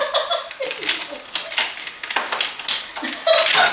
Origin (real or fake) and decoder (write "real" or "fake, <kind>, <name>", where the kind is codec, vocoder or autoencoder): real